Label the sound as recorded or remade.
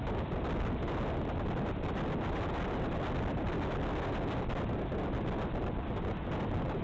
recorded